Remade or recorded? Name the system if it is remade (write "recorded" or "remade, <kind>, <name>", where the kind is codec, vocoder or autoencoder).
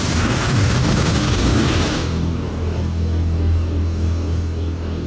remade, codec, DAC